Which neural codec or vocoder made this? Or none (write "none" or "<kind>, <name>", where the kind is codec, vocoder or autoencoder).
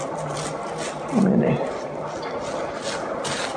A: none